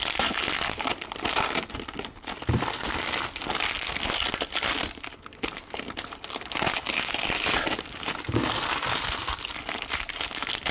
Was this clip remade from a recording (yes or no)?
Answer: no